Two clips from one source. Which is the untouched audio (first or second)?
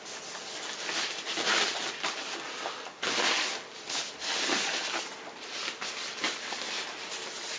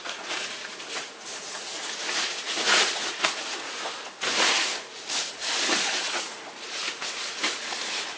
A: first